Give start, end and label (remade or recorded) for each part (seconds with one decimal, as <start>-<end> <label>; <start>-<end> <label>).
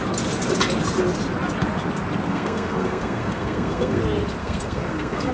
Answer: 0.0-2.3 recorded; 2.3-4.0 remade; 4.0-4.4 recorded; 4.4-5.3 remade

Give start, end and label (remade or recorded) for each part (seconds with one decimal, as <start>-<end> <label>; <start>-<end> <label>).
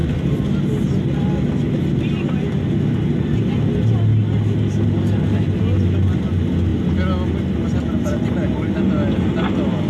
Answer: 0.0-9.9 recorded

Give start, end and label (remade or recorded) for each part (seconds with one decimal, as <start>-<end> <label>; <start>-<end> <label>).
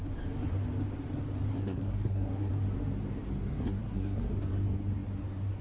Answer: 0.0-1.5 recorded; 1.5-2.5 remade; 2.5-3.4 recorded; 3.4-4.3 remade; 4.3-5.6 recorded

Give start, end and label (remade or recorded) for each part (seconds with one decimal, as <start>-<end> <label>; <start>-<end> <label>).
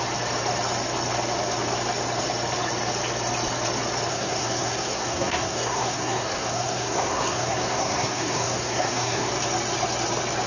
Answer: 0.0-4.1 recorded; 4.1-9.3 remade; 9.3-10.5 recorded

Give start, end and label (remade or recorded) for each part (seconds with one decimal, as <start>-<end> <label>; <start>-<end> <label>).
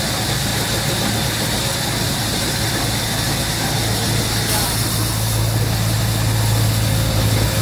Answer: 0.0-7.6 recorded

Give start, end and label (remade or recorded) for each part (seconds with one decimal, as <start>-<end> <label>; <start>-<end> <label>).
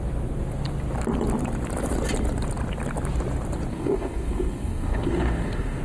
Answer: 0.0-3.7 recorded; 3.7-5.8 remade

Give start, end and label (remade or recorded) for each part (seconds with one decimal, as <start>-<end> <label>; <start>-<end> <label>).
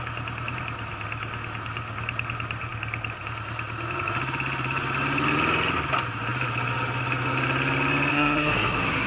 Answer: 0.0-8.1 recorded; 8.1-9.1 remade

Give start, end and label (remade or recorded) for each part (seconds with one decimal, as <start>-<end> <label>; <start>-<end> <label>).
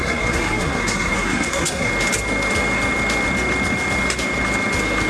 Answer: 0.0-1.9 remade; 1.9-5.1 recorded